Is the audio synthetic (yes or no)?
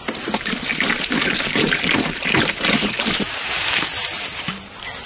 no